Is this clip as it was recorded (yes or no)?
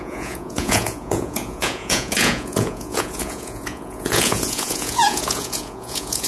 no